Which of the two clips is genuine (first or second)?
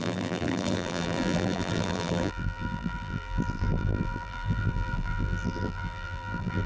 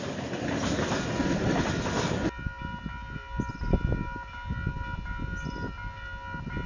second